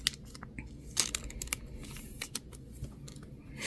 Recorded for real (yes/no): yes